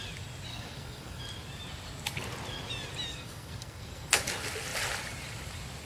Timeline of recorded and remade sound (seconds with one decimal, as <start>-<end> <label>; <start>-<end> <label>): 0.0-0.5 recorded; 0.5-1.2 remade; 1.2-3.1 recorded; 3.1-4.2 remade; 4.2-5.9 recorded